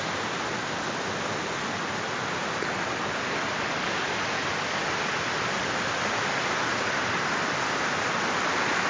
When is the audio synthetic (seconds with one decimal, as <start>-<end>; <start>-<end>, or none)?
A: none